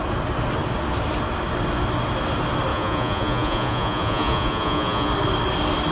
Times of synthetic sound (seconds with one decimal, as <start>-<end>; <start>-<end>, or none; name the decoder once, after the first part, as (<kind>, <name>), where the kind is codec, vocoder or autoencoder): 2.7-5.1 (vocoder, Vocos)